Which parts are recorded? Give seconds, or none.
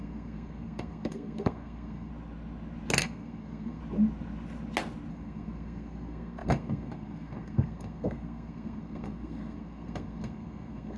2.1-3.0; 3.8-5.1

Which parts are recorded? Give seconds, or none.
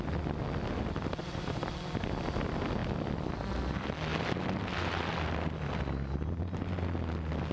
0.0-1.2; 1.7-7.5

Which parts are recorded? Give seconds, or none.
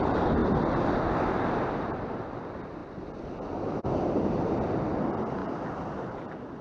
0.0-6.6